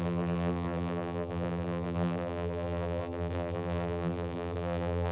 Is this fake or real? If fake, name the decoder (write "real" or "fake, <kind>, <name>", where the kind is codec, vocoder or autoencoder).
fake, vocoder, BigVGAN v2